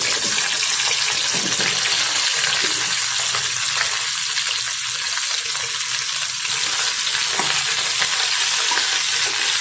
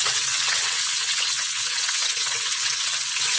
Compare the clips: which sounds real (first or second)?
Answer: first